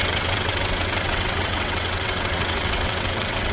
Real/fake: fake